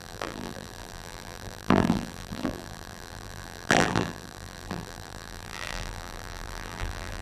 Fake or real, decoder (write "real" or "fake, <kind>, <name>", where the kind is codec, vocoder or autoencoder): fake, vocoder, BigVGAN v2